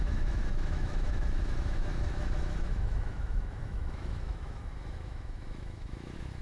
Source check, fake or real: fake